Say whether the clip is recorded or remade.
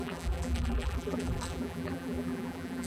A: remade